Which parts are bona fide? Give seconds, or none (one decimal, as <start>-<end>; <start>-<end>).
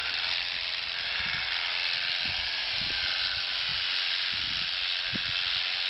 2.5-5.9